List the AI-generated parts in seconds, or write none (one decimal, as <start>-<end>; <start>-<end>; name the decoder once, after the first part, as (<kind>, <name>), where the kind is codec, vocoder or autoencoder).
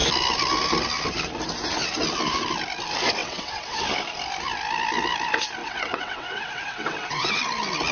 3.2-3.8 (vocoder, WaveNeXt); 5.6-7.4